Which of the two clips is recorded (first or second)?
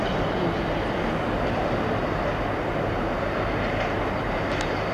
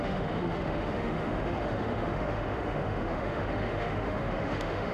first